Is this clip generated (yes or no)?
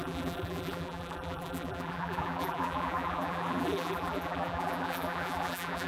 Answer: yes